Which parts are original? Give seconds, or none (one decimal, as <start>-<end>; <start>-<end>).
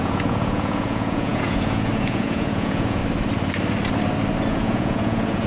3.0-4.5